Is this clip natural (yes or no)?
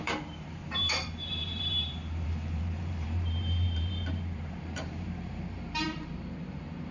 no